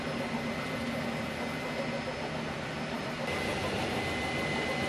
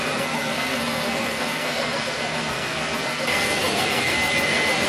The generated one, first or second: second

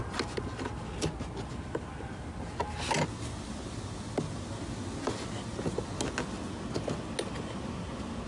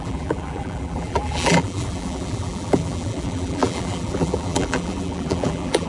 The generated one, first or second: second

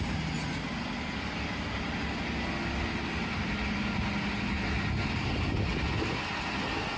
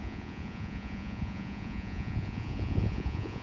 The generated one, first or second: second